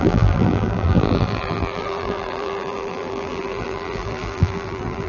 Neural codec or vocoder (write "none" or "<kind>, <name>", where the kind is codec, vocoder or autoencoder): vocoder, BigVGAN v2